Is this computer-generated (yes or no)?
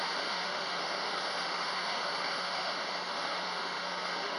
yes